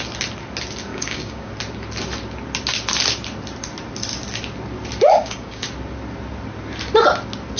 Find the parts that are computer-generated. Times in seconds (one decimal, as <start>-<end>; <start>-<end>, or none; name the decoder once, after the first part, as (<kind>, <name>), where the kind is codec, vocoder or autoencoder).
0.9-1.5 (codec, DAC); 5.1-5.7